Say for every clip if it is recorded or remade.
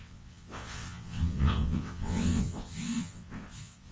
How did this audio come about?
remade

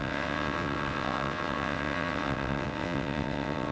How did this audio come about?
remade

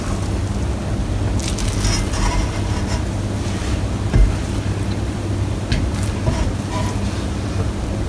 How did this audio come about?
recorded